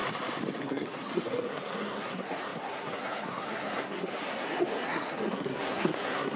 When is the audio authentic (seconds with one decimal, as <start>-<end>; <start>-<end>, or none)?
0.0-0.6